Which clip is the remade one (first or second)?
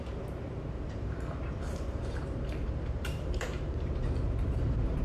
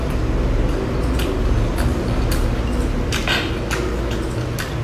first